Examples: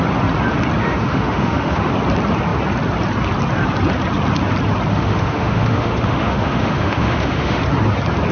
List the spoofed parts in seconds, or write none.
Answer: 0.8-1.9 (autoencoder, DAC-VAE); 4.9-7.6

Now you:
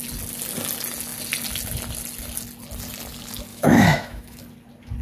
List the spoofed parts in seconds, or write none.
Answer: 3.5-4.4 (autoencoder, DAC-VAE)

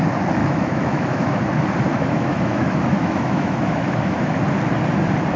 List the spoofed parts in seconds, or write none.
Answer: 0.4-1.4 (autoencoder, DAC-VAE); 1.9-4.4

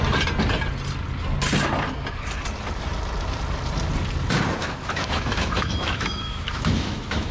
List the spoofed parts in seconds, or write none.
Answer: 4.6-7.3 (autoencoder, DAC-VAE)

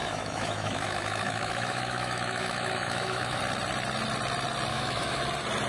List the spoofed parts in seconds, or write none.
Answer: 0.0-3.4 (autoencoder, DAC-VAE); 4.7-5.2